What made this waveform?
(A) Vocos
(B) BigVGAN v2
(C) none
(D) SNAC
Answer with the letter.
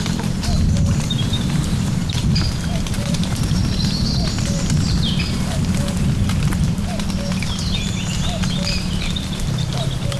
B